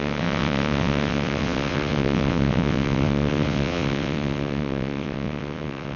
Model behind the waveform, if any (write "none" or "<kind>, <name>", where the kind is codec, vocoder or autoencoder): vocoder, WaveNeXt